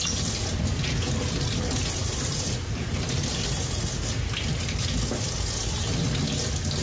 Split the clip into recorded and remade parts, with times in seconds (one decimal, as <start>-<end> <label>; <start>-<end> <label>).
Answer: 0.0-6.8 recorded